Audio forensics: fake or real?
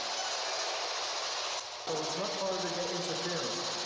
real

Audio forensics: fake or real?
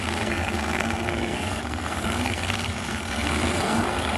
fake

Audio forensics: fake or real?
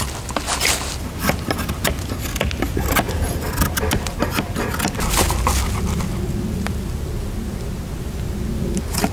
real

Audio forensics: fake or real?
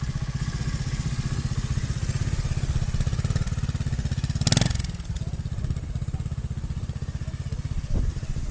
real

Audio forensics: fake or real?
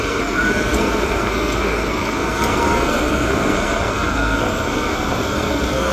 fake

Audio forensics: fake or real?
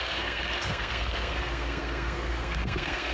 fake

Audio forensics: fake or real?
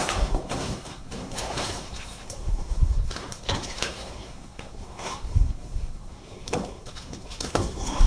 fake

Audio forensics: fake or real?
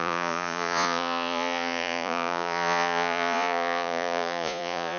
fake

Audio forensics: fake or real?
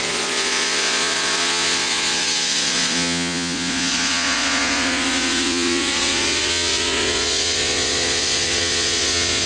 fake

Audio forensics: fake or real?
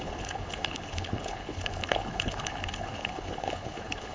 fake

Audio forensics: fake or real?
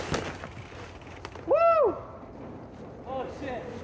real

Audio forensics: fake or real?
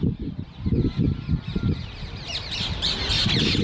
real